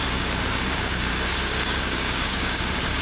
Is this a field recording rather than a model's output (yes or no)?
no